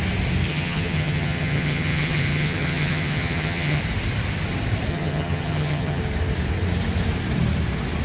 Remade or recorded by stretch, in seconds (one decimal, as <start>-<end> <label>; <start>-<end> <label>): 0.0-0.5 recorded; 0.5-3.8 remade; 3.8-4.9 recorded; 4.9-6.0 remade; 6.0-8.0 recorded